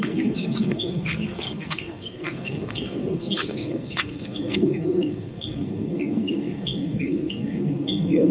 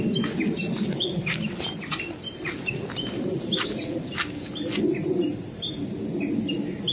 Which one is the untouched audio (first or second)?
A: second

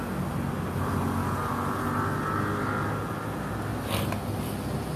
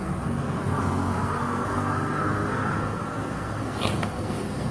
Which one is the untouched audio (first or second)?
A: first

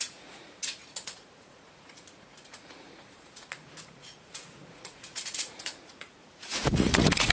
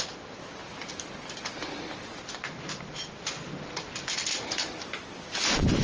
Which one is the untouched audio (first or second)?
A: second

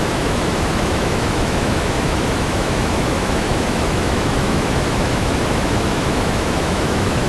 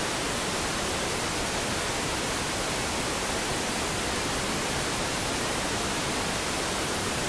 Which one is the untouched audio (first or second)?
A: second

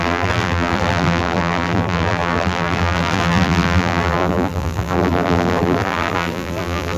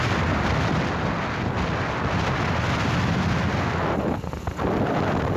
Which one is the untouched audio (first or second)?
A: second